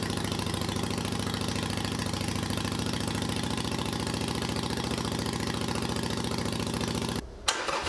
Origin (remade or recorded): recorded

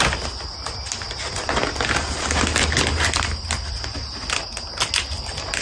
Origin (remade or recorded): recorded